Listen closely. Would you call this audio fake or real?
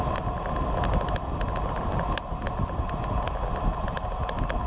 real